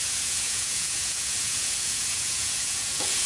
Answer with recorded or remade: remade